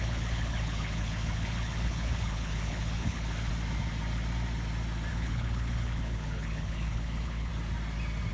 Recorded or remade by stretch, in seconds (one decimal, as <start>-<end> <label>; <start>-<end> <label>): 0.0-3.5 remade; 3.5-5.1 recorded; 5.1-7.5 remade; 7.5-8.3 recorded